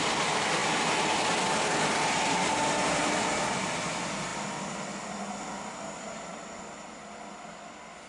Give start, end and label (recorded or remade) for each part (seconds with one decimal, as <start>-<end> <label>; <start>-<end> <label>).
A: 0.0-0.6 remade; 0.6-2.1 recorded; 2.1-4.3 remade; 4.3-5.7 recorded; 5.7-8.1 remade